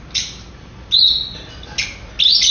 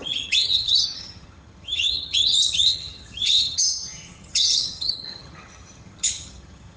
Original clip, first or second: first